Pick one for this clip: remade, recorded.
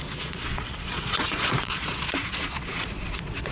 remade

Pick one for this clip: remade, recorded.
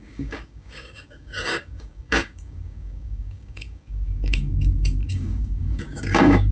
remade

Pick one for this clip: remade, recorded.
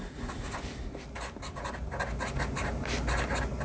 recorded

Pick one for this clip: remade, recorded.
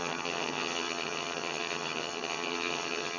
remade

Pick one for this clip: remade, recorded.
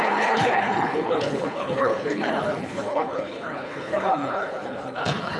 remade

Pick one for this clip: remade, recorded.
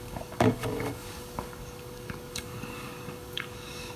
remade